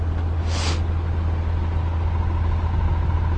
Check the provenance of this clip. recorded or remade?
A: recorded